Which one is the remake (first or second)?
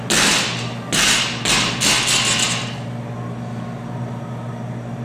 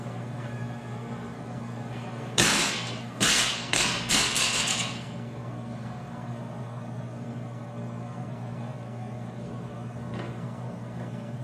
second